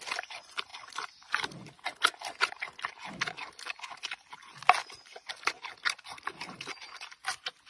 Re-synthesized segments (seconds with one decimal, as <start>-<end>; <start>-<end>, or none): none